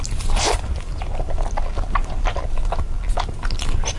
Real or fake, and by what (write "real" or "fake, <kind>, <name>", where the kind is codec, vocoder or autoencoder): real